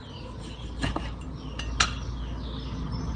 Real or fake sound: real